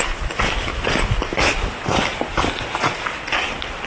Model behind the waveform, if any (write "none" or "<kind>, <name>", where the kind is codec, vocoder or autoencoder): none